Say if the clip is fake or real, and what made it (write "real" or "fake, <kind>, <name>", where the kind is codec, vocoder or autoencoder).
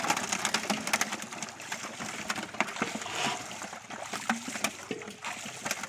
real